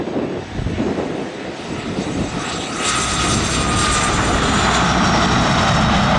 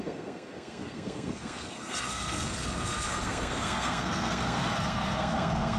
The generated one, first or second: second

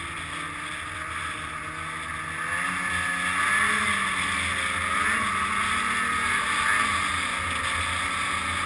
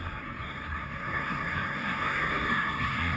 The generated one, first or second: second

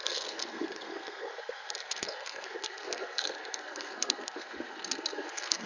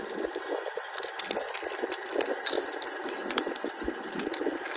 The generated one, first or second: first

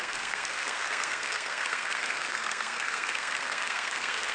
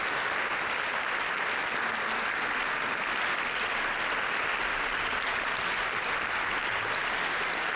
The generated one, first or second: first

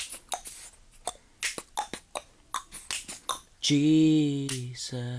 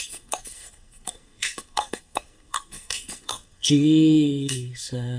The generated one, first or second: second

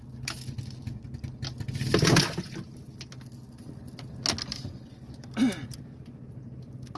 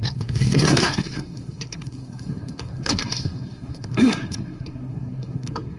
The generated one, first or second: second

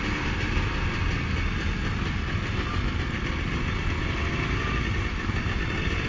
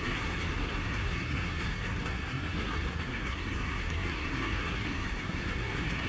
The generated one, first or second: second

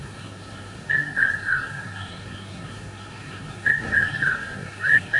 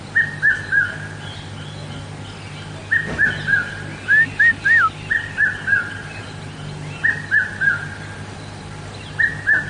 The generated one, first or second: first